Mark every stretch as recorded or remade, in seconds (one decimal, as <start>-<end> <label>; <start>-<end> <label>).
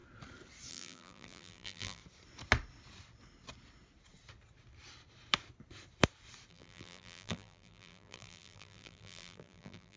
0.0-0.7 recorded; 0.7-2.0 remade; 2.0-6.5 recorded; 6.5-10.0 remade